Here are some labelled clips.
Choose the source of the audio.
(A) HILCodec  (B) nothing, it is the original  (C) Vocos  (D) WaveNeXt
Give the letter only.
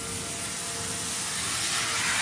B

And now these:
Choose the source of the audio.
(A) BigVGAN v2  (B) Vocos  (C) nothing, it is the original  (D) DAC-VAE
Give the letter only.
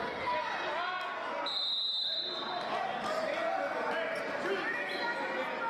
C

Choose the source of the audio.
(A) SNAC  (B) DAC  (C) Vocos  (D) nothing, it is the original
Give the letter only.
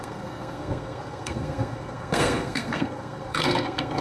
A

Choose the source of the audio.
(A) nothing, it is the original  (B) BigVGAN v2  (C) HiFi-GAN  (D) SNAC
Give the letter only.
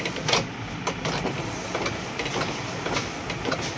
A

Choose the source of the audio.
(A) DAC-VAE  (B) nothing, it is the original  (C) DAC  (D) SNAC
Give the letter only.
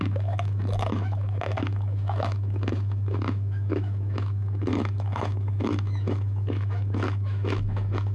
A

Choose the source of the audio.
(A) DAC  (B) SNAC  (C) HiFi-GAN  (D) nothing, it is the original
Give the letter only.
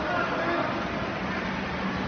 D